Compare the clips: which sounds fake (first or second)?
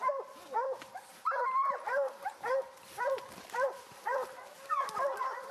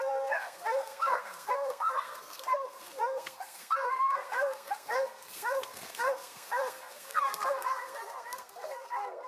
second